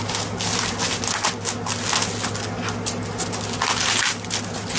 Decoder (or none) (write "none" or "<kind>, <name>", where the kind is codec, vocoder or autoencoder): none